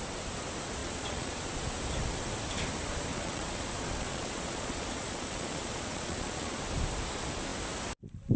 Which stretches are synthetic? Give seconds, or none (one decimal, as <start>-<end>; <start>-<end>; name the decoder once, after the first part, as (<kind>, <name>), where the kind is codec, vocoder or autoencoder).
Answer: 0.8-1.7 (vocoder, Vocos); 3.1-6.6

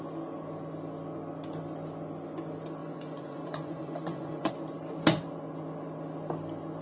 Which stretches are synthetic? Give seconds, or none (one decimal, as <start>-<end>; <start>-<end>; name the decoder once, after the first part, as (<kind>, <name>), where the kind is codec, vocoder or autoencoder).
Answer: 2.8-4.5 (vocoder, Vocos)

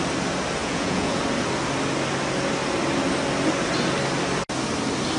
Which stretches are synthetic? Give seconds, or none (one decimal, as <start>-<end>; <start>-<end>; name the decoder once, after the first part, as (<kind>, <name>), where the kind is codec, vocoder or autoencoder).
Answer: 0.6-1.2 (vocoder, Vocos)

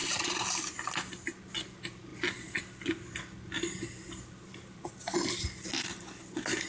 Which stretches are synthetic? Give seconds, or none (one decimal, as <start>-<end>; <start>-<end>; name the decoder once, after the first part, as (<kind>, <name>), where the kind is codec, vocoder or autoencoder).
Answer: none

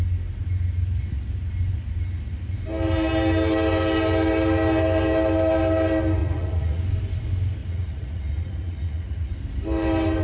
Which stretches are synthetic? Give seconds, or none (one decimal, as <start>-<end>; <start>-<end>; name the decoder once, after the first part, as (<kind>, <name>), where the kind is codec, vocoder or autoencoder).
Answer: 6.2-6.8 (vocoder, Vocos); 7.6-9.3

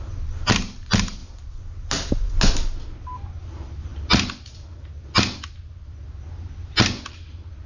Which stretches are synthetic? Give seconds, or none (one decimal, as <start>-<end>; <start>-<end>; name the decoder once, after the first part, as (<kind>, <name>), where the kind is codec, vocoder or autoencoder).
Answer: none